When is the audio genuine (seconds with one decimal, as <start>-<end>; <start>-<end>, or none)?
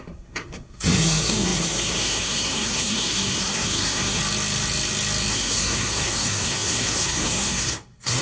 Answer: 4.2-5.3